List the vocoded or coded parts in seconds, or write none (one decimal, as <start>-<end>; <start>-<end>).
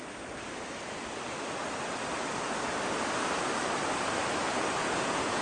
4.8-5.4